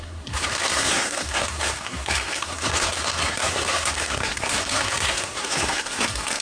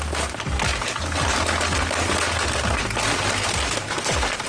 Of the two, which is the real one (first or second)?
second